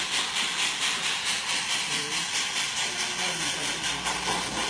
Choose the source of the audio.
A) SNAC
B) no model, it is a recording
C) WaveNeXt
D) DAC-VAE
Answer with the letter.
B